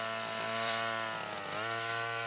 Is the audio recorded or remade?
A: remade